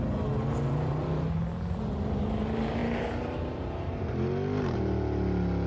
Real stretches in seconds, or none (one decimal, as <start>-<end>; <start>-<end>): 0.0-2.8; 3.9-5.7

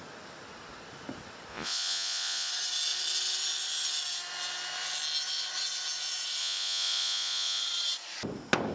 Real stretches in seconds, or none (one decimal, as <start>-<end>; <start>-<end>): 0.0-1.5; 2.5-6.4; 7.6-8.7